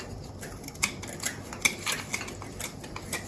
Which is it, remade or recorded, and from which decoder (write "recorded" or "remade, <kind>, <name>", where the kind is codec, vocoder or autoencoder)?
recorded